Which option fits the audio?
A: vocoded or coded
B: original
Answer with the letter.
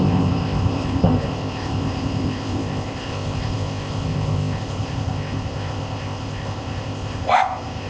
A